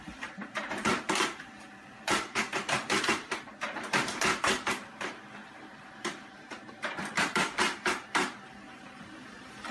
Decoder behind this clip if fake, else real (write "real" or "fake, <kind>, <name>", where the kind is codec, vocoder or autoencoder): fake, vocoder, BigVGAN v2